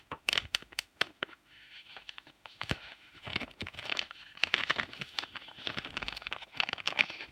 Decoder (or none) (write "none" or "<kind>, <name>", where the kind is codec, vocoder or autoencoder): autoencoder, DAC-VAE